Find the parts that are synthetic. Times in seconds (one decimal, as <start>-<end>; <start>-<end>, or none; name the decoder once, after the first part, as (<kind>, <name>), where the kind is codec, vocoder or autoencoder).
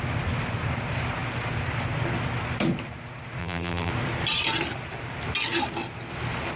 3.4-3.9 (vocoder, BigVGAN v2)